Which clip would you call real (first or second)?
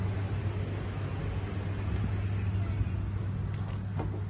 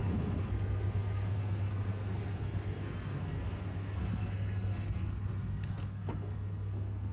first